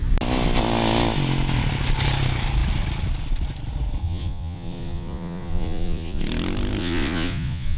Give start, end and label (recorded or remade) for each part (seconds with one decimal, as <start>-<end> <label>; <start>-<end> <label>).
0.0-4.0 recorded; 4.0-6.2 remade; 6.2-6.8 recorded; 6.8-7.8 remade

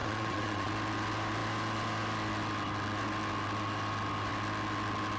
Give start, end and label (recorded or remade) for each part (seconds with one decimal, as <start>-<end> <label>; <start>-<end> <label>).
0.0-0.7 remade; 0.7-5.2 recorded

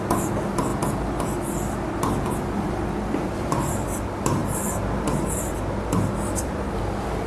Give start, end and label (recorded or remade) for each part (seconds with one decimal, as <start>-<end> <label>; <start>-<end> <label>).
0.0-7.3 recorded

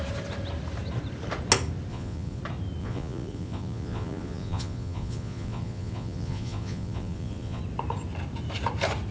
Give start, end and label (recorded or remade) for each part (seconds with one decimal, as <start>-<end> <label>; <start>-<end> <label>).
0.0-1.9 recorded; 1.9-2.4 remade; 2.4-2.8 recorded; 2.8-7.6 remade; 7.6-9.1 recorded

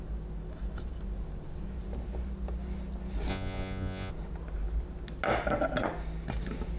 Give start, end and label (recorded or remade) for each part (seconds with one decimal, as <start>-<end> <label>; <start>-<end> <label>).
0.0-3.3 recorded; 3.3-4.1 remade; 4.1-6.8 recorded

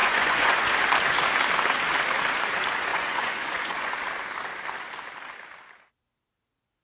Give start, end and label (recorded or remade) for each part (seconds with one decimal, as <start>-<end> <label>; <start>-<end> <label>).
0.0-0.7 remade; 0.7-2.9 recorded; 2.9-3.9 remade; 3.9-6.8 recorded